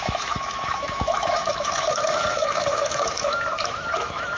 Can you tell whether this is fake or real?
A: fake